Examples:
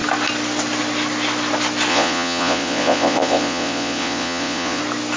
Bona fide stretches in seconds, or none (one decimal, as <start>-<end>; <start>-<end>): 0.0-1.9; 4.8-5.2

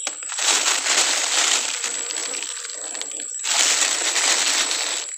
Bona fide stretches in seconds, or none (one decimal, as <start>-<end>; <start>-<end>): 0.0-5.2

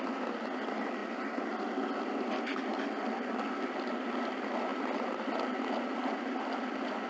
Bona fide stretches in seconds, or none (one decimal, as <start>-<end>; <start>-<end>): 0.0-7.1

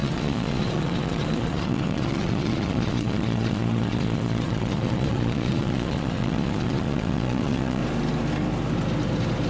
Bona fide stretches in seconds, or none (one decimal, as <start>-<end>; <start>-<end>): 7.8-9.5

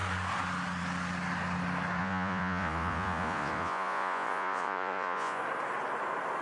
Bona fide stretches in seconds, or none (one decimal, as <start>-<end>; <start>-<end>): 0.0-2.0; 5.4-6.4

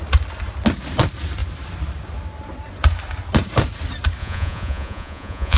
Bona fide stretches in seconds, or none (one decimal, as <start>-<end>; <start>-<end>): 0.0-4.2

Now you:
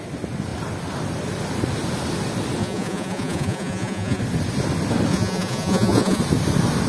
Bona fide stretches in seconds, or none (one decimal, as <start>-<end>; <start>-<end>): 0.0-2.6; 4.2-5.1; 6.2-6.9